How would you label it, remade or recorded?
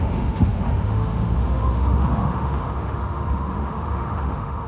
remade